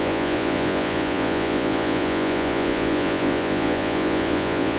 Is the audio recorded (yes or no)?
no